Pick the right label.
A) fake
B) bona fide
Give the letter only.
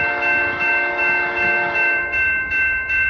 A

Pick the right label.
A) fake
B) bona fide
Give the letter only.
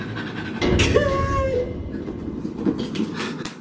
B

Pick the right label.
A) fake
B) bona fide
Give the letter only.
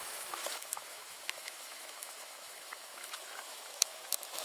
A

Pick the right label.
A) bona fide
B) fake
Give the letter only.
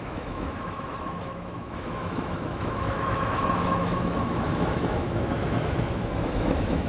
B